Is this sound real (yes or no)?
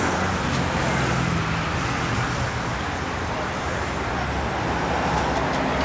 yes